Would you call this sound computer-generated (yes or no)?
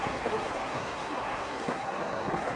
yes